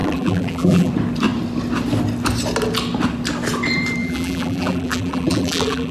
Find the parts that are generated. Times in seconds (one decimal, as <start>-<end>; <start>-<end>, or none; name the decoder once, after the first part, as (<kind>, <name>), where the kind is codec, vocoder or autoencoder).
0.0-0.9 (vocoder, BigVGAN v2); 4.0-5.9